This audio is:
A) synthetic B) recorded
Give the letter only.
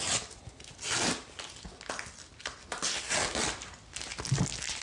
B